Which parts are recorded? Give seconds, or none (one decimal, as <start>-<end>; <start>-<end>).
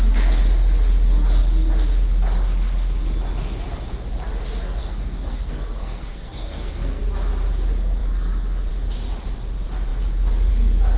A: 0.0-4.8; 7.0-11.0